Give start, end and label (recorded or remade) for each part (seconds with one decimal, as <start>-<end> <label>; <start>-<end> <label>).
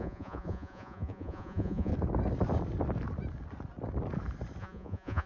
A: 0.0-1.9 remade; 1.9-4.6 recorded; 4.6-5.3 remade